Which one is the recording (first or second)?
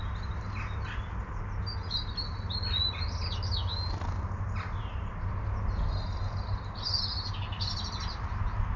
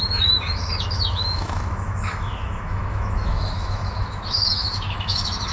first